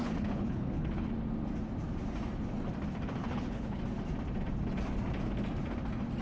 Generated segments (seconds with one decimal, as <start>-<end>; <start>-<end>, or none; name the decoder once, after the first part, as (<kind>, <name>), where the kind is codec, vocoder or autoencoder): 0.0-1.1 (codec, HILCodec); 3.2-3.8